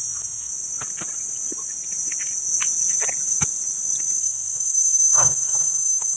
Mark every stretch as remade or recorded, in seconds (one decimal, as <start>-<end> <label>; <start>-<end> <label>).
0.0-0.5 remade; 0.5-4.2 recorded; 4.2-6.2 remade